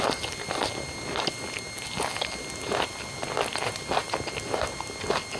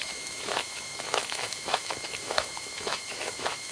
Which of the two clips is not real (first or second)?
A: second